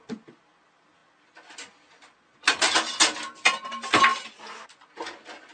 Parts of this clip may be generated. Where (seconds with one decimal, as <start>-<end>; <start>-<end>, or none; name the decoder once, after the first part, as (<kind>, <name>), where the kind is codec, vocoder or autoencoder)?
none